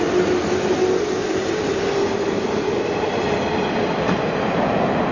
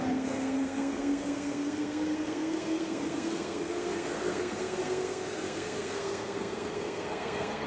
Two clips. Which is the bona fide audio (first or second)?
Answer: first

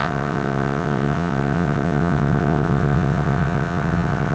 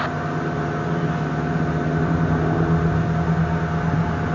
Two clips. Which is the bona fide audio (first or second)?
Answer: second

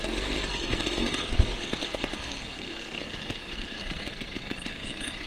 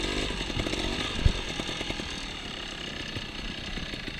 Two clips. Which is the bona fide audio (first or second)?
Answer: second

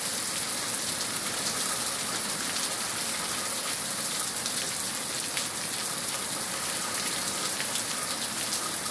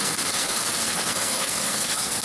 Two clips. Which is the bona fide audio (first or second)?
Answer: first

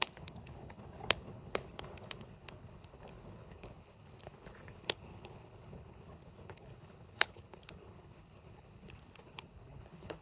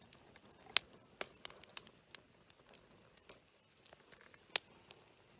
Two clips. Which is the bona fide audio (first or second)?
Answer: second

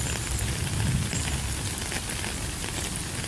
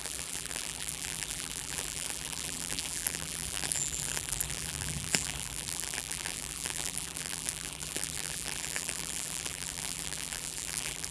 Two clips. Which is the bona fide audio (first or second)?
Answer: first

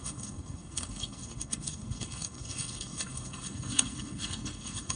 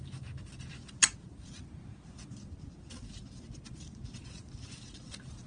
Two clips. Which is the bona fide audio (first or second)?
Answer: second